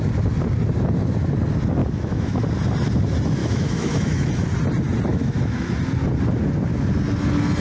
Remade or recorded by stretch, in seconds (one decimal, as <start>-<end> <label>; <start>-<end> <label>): 0.0-1.8 recorded; 1.8-2.4 remade; 2.4-3.4 recorded; 3.4-4.3 remade; 4.3-5.1 recorded; 5.1-5.7 remade; 5.7-7.6 recorded